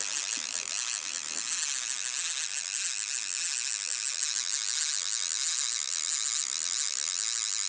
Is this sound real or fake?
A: real